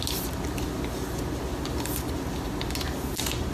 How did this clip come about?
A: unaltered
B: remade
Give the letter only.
A